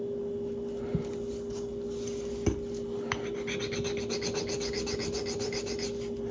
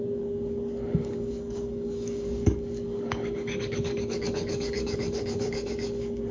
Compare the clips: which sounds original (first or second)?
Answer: first